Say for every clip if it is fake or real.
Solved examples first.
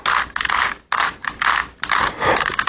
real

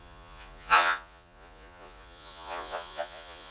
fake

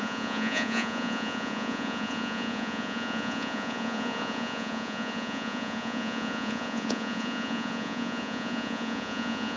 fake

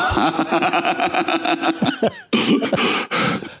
real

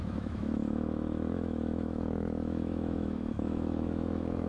fake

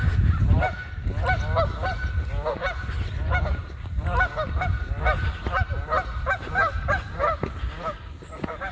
real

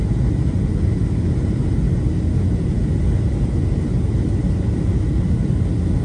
real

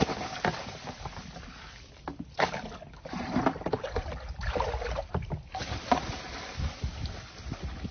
real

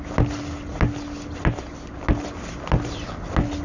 real